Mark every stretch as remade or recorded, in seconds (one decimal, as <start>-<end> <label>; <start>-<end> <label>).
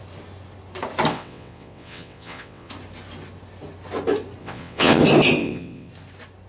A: 0.0-1.1 recorded; 1.1-2.7 remade; 2.7-4.4 recorded; 4.4-5.0 remade; 5.0-5.4 recorded; 5.4-5.9 remade; 5.9-6.5 recorded